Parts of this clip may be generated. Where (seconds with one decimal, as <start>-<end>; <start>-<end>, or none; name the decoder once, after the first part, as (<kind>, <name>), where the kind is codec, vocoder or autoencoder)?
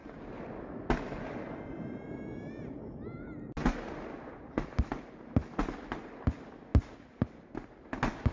none